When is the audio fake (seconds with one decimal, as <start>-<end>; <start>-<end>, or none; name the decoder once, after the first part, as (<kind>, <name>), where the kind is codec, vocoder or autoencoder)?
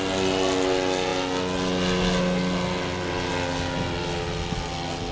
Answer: none